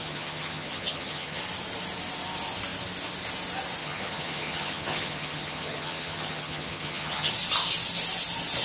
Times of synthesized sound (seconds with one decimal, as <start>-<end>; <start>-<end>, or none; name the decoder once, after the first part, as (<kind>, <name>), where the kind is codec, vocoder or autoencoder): 0.0-1.4 (vocoder, HiFi-GAN); 3.8-7.3